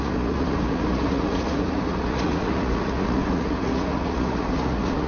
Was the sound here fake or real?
fake